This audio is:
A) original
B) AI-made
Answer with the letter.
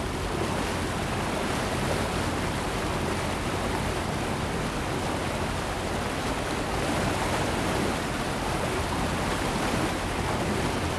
A